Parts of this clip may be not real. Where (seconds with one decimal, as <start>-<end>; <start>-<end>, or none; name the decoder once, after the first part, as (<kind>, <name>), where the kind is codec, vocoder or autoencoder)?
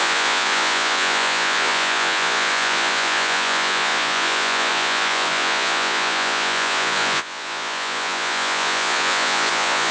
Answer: 0.0-9.9 (vocoder, Vocos)